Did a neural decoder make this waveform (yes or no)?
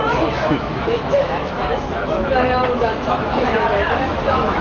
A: yes